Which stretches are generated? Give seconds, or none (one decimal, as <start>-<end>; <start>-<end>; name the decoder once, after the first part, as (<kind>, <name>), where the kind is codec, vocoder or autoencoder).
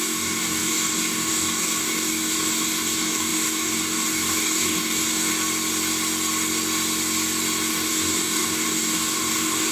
0.0-5.3 (codec, DAC); 7.7-9.7